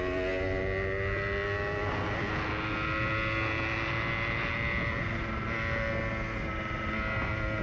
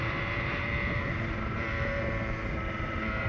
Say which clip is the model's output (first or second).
second